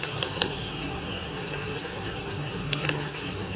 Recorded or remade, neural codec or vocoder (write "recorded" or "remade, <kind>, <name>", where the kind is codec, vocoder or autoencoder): remade, codec, SNAC